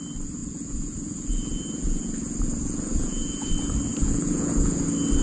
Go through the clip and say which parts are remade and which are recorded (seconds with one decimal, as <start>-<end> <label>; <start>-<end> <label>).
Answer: 0.0-0.4 recorded; 0.4-3.5 remade; 3.5-4.0 recorded; 4.0-4.8 remade; 4.8-5.2 recorded